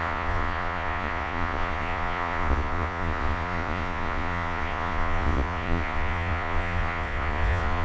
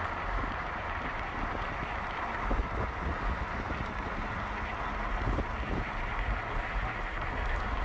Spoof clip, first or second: first